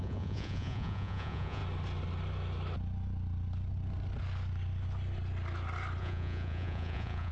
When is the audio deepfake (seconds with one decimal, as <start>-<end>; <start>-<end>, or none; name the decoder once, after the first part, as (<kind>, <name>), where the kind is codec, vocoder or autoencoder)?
0.0-1.6 (vocoder, Vocos); 6.0-7.3